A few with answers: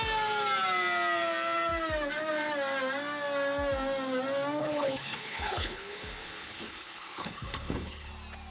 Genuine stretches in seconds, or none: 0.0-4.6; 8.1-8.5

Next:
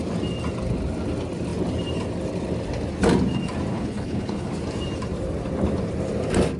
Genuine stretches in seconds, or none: 0.0-3.7; 4.5-6.6

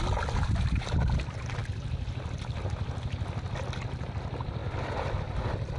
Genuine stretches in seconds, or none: 0.0-5.8

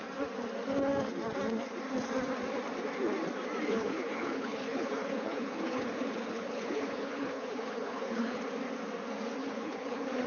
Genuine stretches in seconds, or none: 0.0-3.7; 8.4-9.4

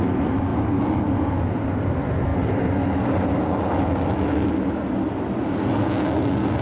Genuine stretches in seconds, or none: 0.0-6.6

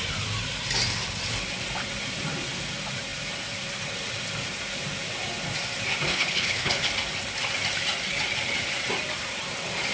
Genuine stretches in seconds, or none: 0.0-6.1; 6.9-9.9

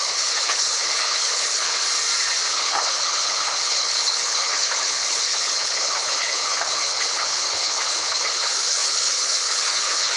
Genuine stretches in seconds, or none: 1.7-2.5